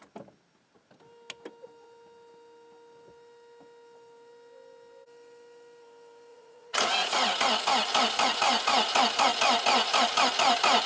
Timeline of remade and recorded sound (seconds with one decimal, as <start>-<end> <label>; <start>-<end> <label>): 0.0-6.3 recorded; 6.3-7.4 remade; 7.4-10.9 recorded